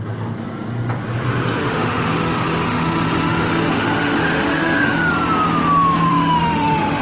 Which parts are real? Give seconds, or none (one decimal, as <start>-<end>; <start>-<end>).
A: 0.0-1.6; 5.1-6.1